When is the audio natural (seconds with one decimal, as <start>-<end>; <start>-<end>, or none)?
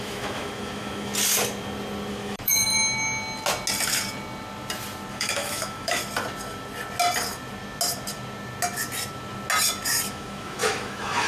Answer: 1.1-2.1; 2.7-5.1; 6.0-10.1